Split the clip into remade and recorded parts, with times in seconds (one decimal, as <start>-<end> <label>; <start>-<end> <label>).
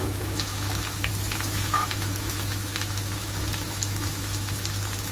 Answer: 0.0-5.1 remade